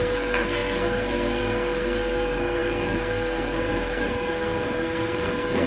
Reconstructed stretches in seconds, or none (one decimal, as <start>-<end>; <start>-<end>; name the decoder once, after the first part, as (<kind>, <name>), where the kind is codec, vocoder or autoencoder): 0.0-5.7 (codec, SNAC)